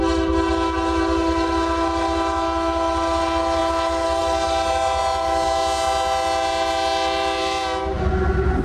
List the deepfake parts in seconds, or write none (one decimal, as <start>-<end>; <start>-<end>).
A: none